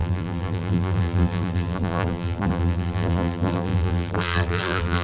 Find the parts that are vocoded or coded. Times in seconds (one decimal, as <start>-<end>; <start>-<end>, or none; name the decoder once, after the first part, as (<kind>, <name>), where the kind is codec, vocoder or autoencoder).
0.0-5.0 (vocoder, BigVGAN v2)